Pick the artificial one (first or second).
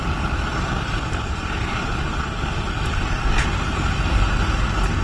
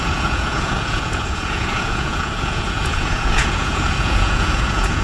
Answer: second